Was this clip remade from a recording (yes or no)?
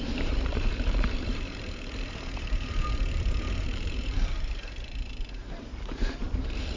yes